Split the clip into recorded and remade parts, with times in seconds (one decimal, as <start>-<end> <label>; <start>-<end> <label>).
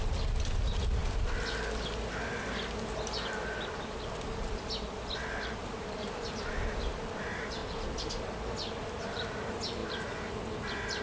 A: 0.0-5.6 recorded; 5.6-6.3 remade; 6.3-11.0 recorded